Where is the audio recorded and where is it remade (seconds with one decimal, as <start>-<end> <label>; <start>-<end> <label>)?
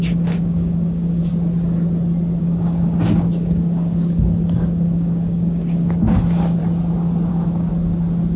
0.0-1.3 remade; 1.3-2.4 recorded; 2.4-6.6 remade; 6.6-7.3 recorded; 7.3-7.7 remade; 7.7-8.4 recorded